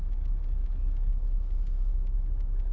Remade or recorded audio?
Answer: recorded